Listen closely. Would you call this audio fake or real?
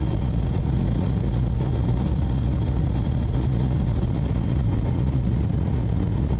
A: fake